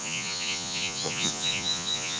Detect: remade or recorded remade